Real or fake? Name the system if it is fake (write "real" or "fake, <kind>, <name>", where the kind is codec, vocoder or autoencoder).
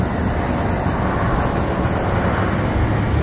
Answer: real